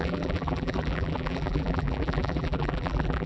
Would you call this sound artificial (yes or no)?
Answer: yes